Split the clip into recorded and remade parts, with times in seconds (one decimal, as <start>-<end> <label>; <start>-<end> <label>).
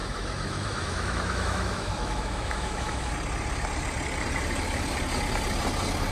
0.0-3.1 remade; 3.1-6.1 recorded